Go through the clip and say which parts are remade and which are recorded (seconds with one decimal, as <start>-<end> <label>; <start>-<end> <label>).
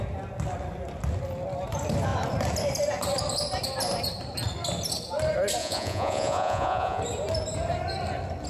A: 0.0-5.6 recorded; 5.6-7.0 remade; 7.0-8.5 recorded